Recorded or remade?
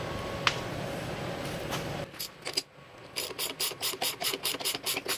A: recorded